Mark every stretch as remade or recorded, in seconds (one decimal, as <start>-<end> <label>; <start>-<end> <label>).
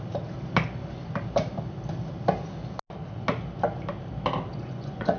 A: 0.0-4.5 recorded; 4.5-5.2 remade